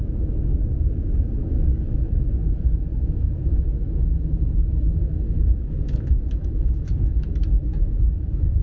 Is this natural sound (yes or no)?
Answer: no